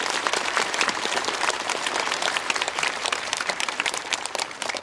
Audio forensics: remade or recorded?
remade